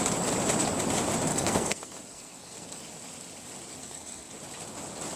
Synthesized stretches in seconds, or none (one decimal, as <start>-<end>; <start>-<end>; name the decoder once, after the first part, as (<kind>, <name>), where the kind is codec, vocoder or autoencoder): 1.3-2.8 (codec, SNAC); 3.8-4.3